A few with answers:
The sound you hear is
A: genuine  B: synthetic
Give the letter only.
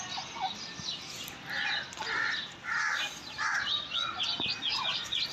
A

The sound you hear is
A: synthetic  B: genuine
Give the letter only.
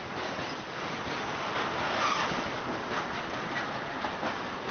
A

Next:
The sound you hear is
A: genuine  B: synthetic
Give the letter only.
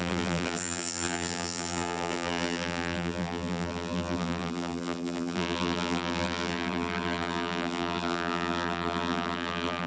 B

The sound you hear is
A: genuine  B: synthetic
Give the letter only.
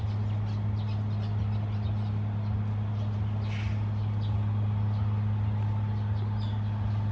A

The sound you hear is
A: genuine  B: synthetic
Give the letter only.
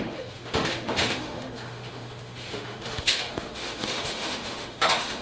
B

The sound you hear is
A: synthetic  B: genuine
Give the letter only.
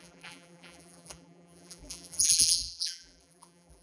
A